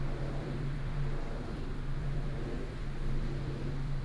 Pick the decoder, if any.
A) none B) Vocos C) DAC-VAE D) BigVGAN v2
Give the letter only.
D